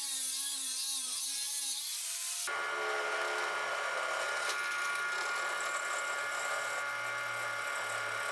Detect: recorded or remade recorded